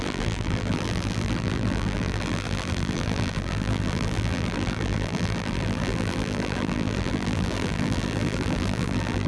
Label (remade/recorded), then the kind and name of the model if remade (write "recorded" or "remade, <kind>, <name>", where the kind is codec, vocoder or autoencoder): remade, vocoder, BigVGAN v2